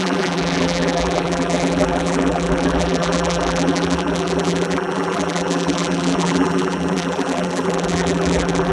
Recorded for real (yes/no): no